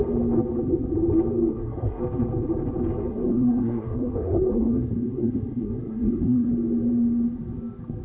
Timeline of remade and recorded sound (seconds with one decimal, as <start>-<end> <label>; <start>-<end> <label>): 0.0-1.5 recorded; 1.5-2.0 remade; 2.0-3.1 recorded; 3.1-6.5 remade; 6.5-8.0 recorded